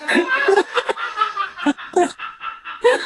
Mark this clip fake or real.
fake